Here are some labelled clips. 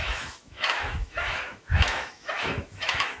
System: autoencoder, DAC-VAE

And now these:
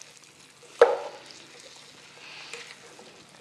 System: none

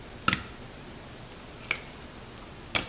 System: none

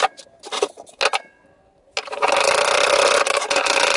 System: none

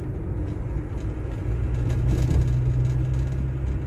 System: none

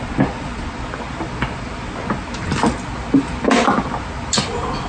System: none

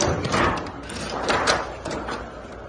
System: vocoder, BigVGAN v2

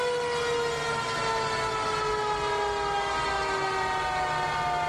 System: none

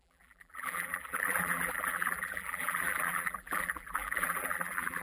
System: vocoder, BigVGAN v2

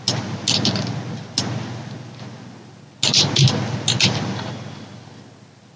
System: none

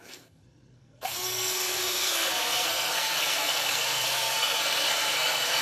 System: codec, SNAC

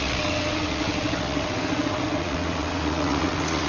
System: vocoder, WaveNeXt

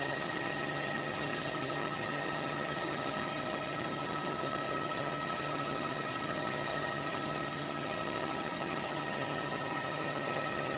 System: vocoder, HiFi-GAN